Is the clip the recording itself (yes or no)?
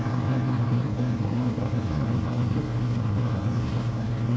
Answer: no